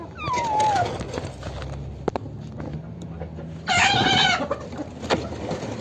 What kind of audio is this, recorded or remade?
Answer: recorded